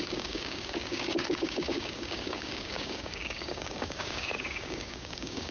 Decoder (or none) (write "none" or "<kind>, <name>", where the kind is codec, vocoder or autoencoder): codec, DAC